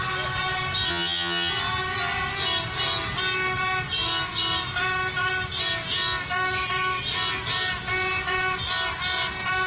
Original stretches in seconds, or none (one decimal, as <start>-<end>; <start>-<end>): 0.0-0.9; 1.5-9.7